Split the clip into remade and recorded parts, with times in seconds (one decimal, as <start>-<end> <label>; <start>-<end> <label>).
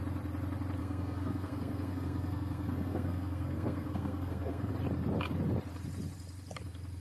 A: 0.0-0.8 recorded; 0.8-4.7 remade; 4.7-7.0 recorded